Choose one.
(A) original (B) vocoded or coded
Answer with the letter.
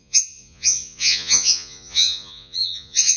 B